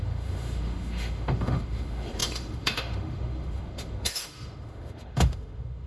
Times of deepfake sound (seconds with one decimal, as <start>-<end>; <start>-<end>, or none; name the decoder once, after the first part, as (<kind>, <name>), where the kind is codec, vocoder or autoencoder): 0.0-5.9 (autoencoder, DAC-VAE)